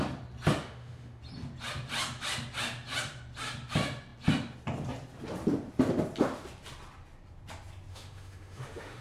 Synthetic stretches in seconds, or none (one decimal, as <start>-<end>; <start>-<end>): 0.6-1.2; 7.9-9.0